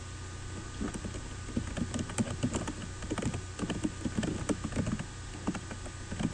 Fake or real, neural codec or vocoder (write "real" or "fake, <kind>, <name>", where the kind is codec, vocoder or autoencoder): real